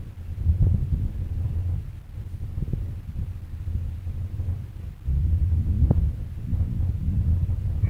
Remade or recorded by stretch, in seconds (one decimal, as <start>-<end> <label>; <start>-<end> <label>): 0.0-1.6 remade; 1.6-2.2 recorded; 2.2-7.9 remade